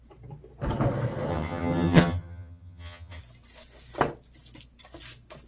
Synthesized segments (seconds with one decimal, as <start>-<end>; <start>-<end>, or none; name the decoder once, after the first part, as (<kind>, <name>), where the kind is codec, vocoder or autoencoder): 1.3-3.2 (vocoder, HiFi-GAN)